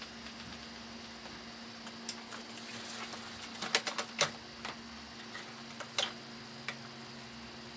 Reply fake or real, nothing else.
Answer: real